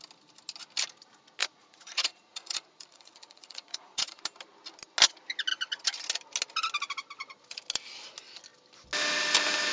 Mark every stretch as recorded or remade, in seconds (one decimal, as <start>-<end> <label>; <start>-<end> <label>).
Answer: 0.0-1.4 recorded; 1.4-4.2 remade; 4.2-9.7 recorded